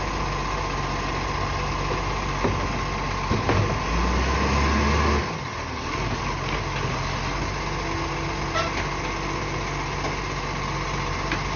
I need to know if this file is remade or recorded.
recorded